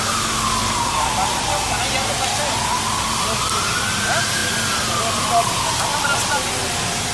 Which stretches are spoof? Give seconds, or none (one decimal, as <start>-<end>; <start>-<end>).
0.6-1.8

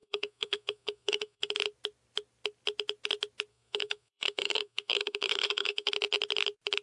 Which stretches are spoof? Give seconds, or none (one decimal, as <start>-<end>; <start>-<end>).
0.0-1.5; 3.5-5.9

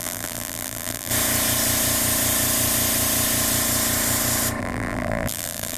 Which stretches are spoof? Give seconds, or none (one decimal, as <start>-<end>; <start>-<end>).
0.0-1.1; 4.6-5.8

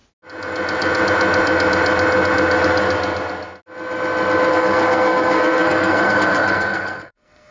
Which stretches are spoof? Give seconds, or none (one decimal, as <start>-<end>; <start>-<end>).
4.5-7.5

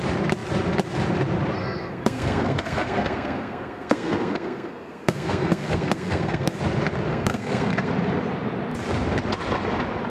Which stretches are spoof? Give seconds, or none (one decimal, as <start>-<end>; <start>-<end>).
1.6-6.6; 7.1-7.9

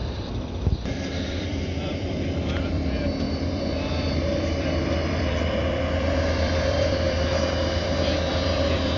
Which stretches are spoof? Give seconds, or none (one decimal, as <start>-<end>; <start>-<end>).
0.0-9.0

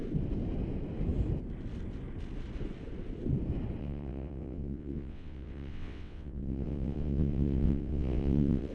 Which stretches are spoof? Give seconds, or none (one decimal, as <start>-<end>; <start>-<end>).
3.8-8.7